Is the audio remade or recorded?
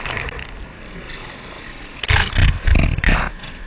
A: recorded